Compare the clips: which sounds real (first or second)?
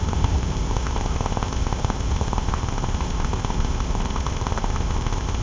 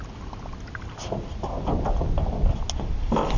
second